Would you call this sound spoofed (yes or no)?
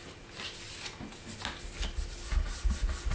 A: no